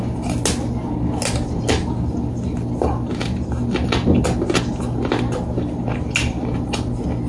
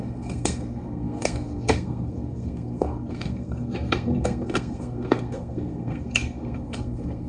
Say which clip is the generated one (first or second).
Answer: second